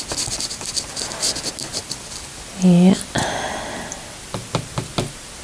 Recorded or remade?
recorded